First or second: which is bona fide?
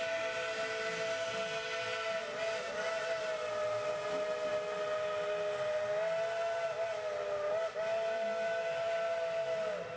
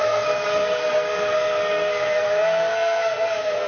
first